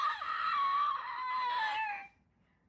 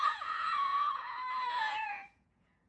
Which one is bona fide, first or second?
first